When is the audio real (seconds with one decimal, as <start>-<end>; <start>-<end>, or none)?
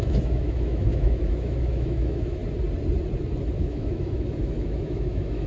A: 2.4-3.6